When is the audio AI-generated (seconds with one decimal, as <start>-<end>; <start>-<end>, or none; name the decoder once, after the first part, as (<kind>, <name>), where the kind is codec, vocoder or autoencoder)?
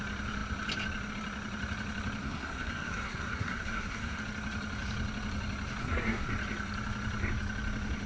2.2-4.2 (codec, SNAC); 5.8-6.3